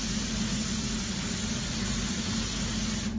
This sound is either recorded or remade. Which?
recorded